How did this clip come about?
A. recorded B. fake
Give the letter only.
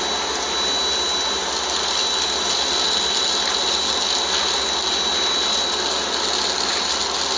A